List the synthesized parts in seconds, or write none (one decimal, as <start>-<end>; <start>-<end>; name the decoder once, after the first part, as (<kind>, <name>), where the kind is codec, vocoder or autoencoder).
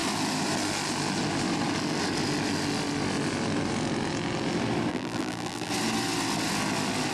4.9-5.7 (vocoder, BigVGAN v2)